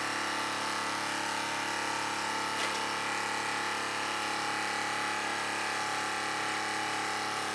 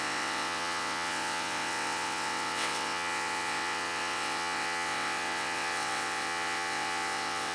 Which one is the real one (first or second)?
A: first